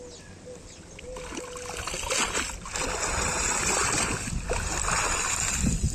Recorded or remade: recorded